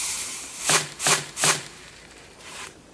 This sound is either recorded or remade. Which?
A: remade